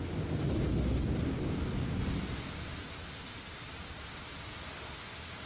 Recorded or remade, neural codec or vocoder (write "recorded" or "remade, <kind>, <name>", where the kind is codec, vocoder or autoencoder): recorded